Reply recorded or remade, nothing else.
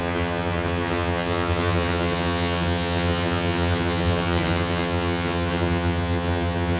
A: remade